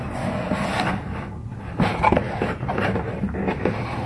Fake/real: real